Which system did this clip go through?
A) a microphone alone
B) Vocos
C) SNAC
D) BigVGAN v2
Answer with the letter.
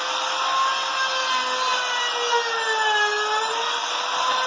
A